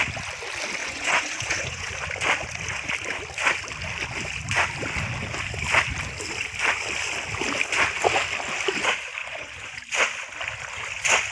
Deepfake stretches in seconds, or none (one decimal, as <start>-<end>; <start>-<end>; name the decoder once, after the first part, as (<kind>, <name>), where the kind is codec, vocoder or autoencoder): 0.8-1.9 (vocoder, Vocos); 9.2-9.8